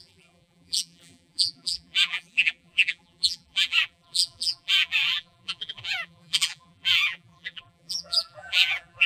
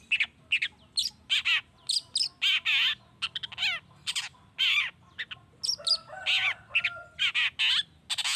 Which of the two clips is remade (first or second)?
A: first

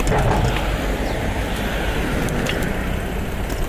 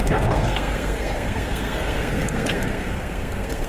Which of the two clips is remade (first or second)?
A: second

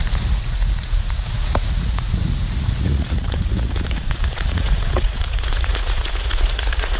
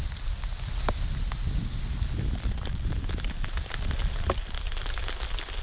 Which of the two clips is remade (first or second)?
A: first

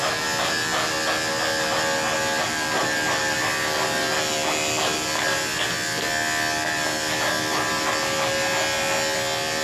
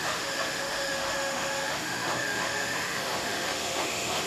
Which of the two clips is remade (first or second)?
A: second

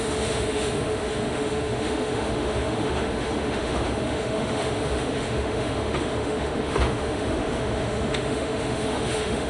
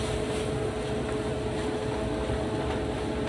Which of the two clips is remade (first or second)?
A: first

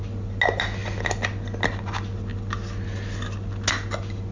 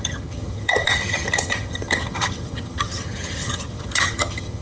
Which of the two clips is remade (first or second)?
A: second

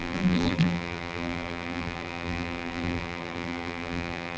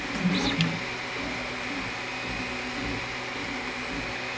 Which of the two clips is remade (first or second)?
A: first